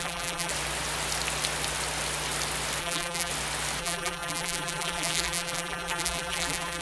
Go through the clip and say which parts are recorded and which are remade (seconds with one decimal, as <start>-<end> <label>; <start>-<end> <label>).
0.0-0.5 remade; 0.5-2.8 recorded; 2.8-3.3 remade; 3.3-3.8 recorded; 3.8-6.8 remade